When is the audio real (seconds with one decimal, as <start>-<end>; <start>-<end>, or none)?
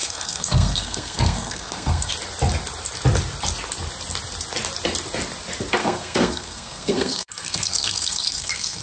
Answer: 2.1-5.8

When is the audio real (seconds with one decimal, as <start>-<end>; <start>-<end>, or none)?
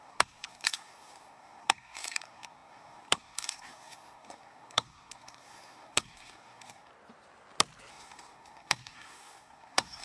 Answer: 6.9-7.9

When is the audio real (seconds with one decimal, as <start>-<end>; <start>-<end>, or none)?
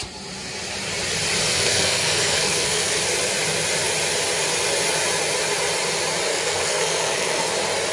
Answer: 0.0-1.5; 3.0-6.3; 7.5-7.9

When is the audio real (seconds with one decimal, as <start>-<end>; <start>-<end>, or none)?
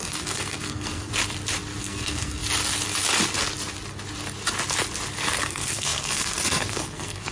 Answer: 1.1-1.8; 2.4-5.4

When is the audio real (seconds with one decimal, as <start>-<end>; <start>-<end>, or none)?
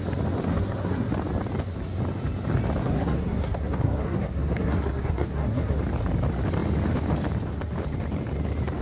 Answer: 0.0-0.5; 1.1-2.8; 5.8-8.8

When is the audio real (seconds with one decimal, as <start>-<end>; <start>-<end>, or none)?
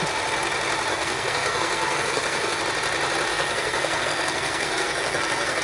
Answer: 0.0-0.9; 2.6-3.3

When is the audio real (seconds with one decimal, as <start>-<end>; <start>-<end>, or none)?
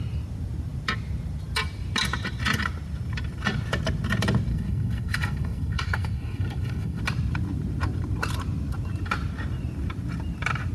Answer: 0.0-4.5; 7.0-10.7